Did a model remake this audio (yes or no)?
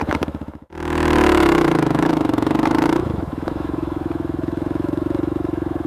yes